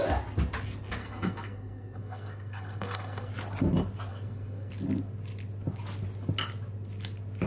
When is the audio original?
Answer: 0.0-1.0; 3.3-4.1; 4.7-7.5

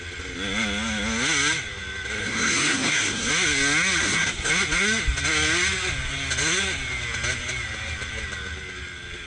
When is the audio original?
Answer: 0.0-2.2; 3.3-4.0; 4.5-9.3

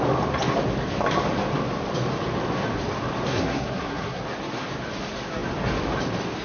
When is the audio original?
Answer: 0.0-3.3; 4.2-6.4

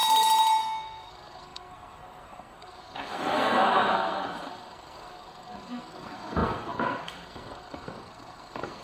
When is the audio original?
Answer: 0.0-0.6

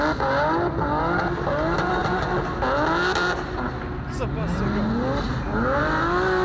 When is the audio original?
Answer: 0.0-6.4

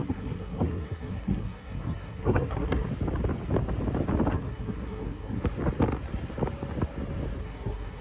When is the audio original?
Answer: 2.9-4.3; 5.4-7.4

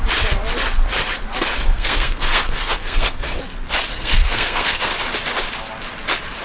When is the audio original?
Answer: 0.0-1.6; 3.4-3.9; 4.9-6.4

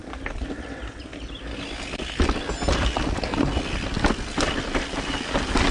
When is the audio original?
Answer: 0.0-5.7